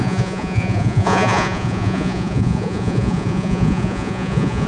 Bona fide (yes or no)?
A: no